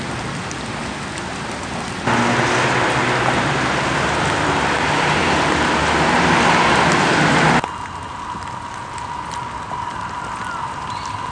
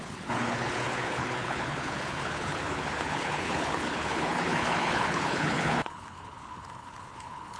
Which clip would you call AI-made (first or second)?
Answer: second